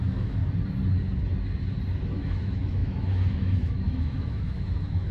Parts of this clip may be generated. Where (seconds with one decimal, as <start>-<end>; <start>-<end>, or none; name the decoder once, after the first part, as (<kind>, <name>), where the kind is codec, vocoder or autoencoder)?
0.0-0.4 (autoencoder, DAC-VAE); 2.1-5.1